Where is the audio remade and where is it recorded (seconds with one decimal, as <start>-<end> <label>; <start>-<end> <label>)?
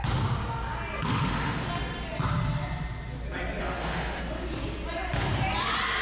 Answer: 0.0-1.1 recorded; 1.1-1.7 remade; 1.7-3.6 recorded; 3.6-4.2 remade; 4.2-6.0 recorded